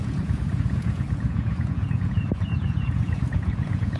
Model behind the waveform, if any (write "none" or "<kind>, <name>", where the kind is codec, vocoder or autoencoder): vocoder, Vocos